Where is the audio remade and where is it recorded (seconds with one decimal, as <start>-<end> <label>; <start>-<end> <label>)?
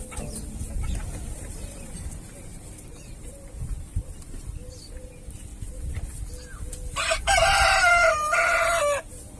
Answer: 0.0-1.2 recorded; 1.2-4.5 remade; 4.5-9.4 recorded